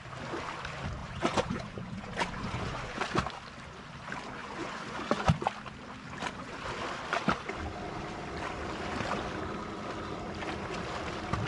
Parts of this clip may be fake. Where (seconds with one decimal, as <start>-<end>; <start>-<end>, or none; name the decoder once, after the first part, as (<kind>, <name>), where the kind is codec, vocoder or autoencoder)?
1.0-3.0 (vocoder, Vocos); 4.4-5.5